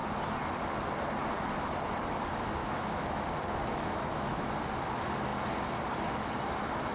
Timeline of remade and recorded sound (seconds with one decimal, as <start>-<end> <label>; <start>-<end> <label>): 0.0-2.6 recorded; 2.6-3.2 remade; 3.2-3.6 recorded; 3.6-4.5 remade; 4.5-6.9 recorded